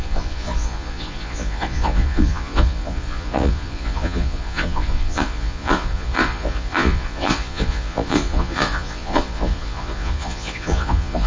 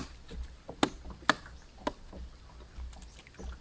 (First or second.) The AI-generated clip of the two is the first